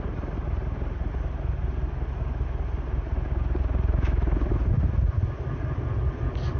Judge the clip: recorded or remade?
recorded